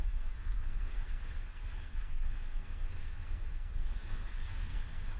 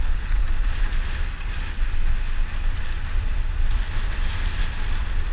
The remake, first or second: first